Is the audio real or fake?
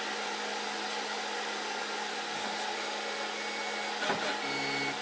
real